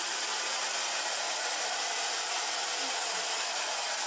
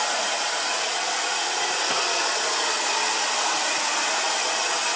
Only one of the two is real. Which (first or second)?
second